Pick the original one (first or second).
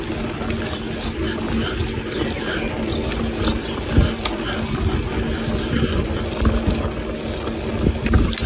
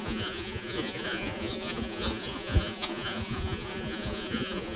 first